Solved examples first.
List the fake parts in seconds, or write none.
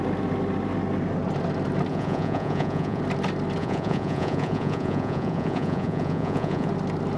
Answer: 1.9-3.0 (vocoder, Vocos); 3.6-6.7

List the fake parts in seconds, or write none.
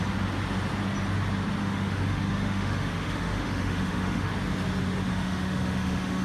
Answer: 1.6-4.3 (autoencoder, DAC-VAE); 5.1-6.2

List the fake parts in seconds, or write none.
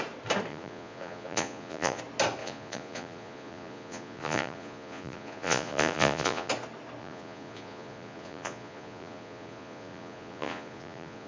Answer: 0.5-2.0 (vocoder, Vocos); 2.4-6.5; 7.0-11.3